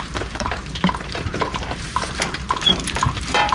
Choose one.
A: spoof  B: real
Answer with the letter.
A